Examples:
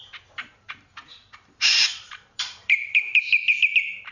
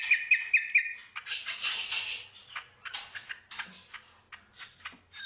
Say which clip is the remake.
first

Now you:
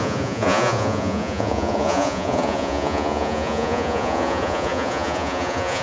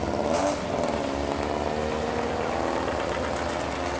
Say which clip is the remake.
first